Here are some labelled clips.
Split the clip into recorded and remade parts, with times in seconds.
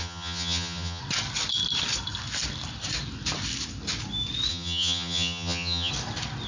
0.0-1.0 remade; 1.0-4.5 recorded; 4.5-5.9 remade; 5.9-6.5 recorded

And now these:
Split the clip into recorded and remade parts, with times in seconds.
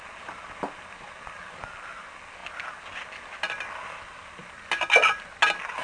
0.0-5.8 recorded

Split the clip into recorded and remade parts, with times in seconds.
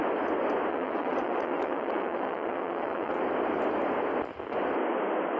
0.0-0.7 recorded; 0.7-3.2 remade; 3.2-5.4 recorded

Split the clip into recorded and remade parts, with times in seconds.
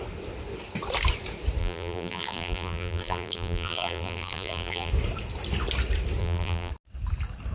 0.0-1.6 recorded; 1.6-4.9 remade; 4.9-6.2 recorded; 6.2-6.7 remade; 6.7-7.5 recorded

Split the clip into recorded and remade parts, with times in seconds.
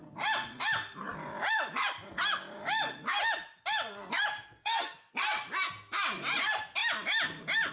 0.0-4.6 recorded; 4.6-5.1 remade; 5.1-7.7 recorded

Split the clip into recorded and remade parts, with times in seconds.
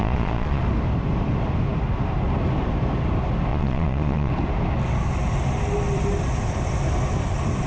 0.0-0.6 remade; 0.6-3.5 recorded; 3.5-4.3 remade; 4.3-7.7 recorded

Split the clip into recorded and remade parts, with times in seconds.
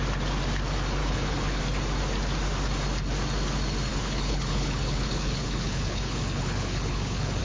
0.0-1.0 recorded; 1.0-1.6 remade; 1.6-3.9 recorded; 3.9-7.4 remade